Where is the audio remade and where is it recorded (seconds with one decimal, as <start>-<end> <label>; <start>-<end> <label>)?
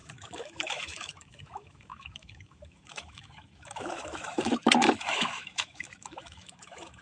0.0-7.0 remade